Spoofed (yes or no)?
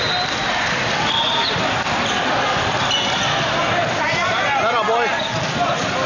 no